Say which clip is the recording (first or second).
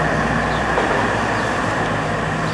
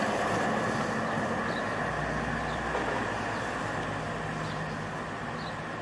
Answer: second